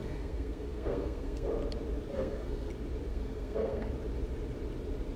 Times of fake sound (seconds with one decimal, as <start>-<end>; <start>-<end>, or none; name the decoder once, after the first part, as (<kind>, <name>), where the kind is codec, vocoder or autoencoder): 0.0-1.5 (codec, SNAC); 2.1-2.7; 3.1-3.9